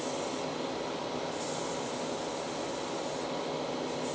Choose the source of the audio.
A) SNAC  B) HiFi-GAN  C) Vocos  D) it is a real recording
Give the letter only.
D